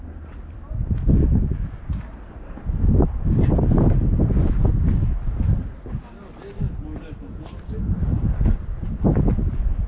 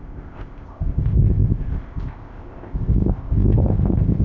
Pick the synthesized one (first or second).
second